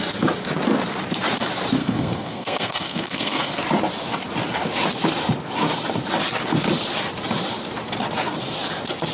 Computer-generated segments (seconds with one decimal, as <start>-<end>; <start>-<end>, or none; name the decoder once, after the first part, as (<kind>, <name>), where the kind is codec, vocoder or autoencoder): 1.8-3.5 (codec, SNAC)